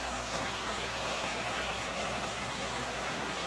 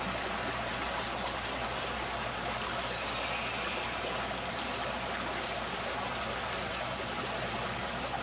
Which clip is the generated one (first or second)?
first